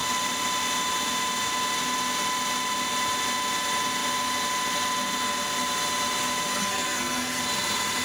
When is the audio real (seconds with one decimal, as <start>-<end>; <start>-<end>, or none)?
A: 0.0-6.5; 7.4-8.0